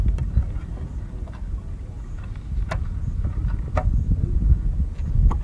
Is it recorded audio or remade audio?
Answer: recorded